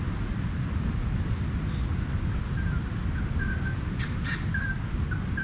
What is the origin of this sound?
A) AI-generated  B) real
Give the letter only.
B